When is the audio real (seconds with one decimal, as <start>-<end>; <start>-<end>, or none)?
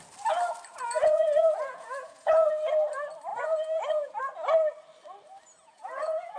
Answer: 0.0-0.7; 2.5-3.3; 4.2-5.6